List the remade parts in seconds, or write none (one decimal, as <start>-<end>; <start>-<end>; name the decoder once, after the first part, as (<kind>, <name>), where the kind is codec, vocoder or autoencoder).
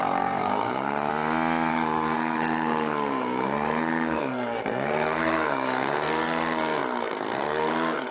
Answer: 0.0-1.1 (codec, SNAC); 1.7-8.1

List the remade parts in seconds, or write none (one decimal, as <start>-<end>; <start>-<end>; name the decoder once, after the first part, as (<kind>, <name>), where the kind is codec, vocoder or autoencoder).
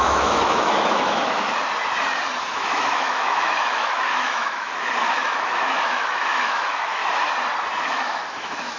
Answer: 0.0-1.5 (autoencoder, DAC-VAE); 2.5-7.0; 7.8-8.8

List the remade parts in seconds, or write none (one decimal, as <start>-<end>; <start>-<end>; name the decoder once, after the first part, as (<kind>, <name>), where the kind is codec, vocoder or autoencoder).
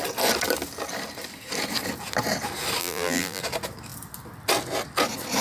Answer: 2.8-3.4 (vocoder, BigVGAN v2)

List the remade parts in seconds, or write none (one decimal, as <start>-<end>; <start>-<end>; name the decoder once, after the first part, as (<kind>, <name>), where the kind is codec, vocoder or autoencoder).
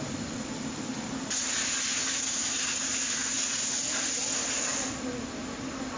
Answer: none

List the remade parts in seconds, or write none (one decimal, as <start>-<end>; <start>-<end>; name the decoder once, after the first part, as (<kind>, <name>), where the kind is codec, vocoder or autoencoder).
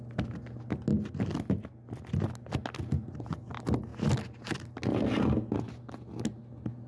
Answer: none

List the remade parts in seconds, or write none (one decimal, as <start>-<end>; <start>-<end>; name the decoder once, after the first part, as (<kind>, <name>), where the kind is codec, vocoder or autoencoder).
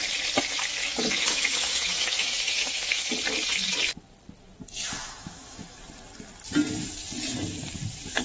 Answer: 0.8-3.1 (autoencoder, DAC-VAE); 5.0-5.8